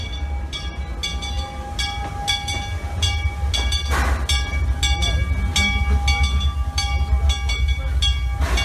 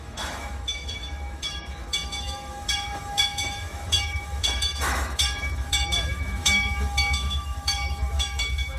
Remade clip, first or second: second